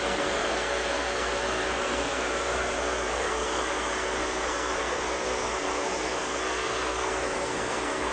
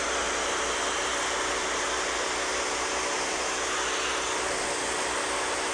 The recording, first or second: second